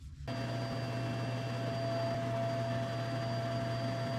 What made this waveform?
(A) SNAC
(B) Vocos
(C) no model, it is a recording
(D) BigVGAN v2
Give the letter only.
C